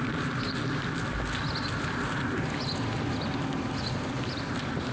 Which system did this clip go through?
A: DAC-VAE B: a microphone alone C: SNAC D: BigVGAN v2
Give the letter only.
B